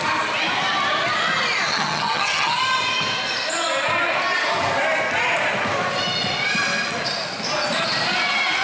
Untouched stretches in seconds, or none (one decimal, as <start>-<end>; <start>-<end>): 0.0-1.7; 2.6-8.6